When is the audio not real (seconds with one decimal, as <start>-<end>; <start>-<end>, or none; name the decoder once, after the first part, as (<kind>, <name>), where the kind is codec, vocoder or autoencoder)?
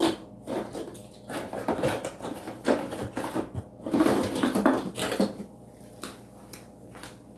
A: none